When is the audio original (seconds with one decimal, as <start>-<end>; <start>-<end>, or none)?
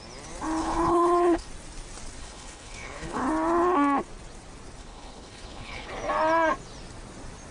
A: 0.0-0.6; 1.5-2.2; 3.2-4.8; 5.9-7.5